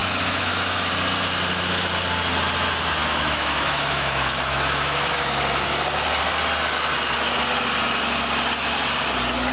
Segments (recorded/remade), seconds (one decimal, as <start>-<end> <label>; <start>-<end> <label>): 0.0-0.9 remade; 0.9-3.0 recorded; 3.0-5.4 remade; 5.4-9.5 recorded